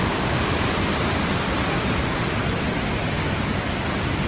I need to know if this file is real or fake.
real